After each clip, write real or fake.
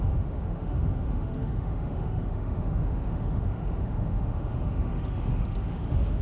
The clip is fake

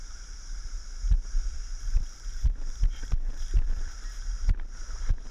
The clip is fake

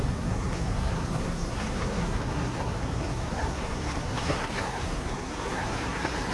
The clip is fake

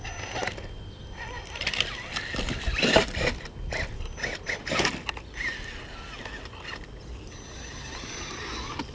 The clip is real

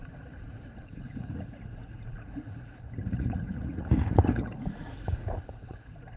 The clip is fake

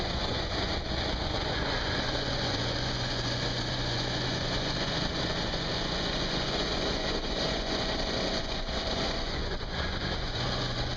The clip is fake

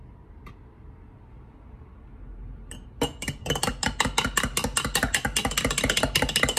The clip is real